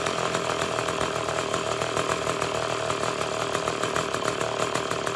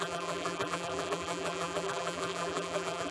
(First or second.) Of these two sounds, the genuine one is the first